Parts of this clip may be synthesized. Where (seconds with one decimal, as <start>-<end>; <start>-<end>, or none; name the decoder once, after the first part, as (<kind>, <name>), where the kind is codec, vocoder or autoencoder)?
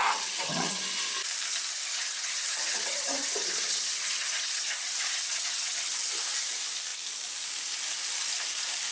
0.0-0.8 (vocoder, HiFi-GAN); 1.7-5.9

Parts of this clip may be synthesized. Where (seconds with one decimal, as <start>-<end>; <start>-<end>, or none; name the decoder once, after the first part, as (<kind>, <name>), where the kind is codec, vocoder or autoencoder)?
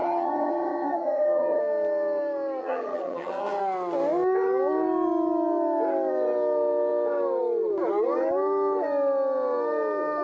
0.0-1.6 (vocoder, HiFi-GAN); 2.6-3.6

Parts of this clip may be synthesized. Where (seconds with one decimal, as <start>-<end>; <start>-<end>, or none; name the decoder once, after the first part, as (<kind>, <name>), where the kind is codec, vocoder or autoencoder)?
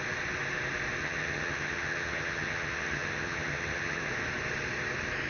1.0-4.1 (vocoder, HiFi-GAN)